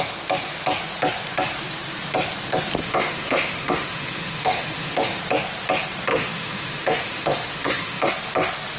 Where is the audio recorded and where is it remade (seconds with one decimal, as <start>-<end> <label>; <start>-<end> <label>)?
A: 0.0-2.8 recorded; 2.8-5.2 remade; 5.2-6.1 recorded; 6.1-8.1 remade; 8.1-8.8 recorded